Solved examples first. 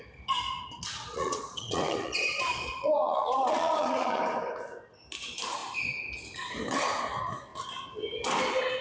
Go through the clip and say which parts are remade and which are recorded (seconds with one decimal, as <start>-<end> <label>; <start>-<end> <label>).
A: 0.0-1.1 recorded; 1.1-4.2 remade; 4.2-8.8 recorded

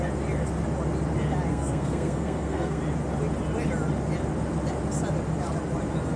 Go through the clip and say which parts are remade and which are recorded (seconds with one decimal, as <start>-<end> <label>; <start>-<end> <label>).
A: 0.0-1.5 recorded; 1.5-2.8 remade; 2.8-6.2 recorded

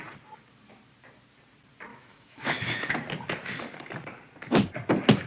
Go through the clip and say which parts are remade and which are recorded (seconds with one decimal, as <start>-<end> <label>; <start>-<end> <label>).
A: 0.0-1.9 recorded; 1.9-2.9 remade; 2.9-5.3 recorded

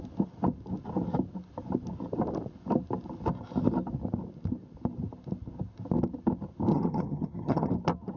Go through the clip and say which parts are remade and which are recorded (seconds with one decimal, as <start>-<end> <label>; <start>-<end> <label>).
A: 0.0-6.7 recorded; 6.7-7.7 remade; 7.7-8.2 recorded